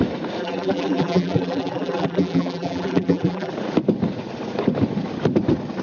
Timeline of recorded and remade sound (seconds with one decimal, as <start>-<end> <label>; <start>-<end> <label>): 0.0-0.4 recorded; 0.4-3.5 remade; 3.5-5.8 recorded